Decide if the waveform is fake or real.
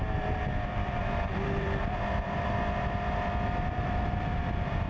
fake